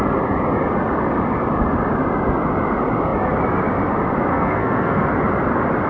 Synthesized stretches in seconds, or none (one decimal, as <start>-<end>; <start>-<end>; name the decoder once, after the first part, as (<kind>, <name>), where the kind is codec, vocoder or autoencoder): 4.3-5.1 (codec, SNAC)